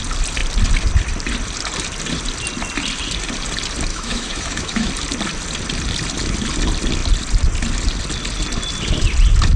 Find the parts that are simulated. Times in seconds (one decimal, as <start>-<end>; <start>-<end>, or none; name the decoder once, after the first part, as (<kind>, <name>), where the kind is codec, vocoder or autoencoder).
3.9-4.9 (autoencoder, DAC-VAE)